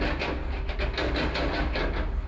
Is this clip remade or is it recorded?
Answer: recorded